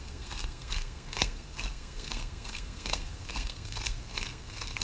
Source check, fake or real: fake